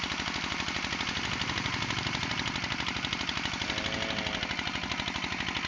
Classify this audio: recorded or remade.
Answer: recorded